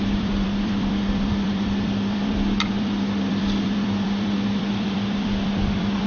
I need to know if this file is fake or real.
fake